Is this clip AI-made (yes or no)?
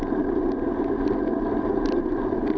no